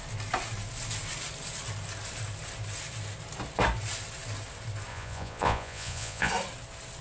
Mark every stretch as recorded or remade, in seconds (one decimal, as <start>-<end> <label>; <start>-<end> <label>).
0.0-4.9 recorded; 4.9-6.3 remade; 6.3-7.0 recorded